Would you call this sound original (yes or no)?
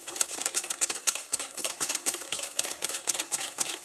no